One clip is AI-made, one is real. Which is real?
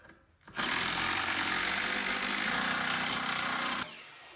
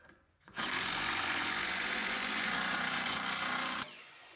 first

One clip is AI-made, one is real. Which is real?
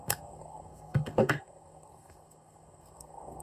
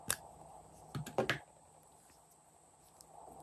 second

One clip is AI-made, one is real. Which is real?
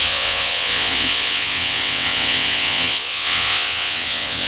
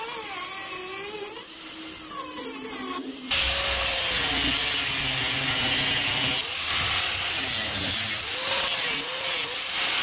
second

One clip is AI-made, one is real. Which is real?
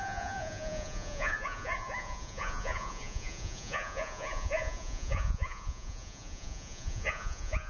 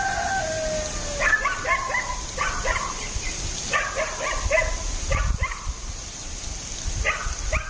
second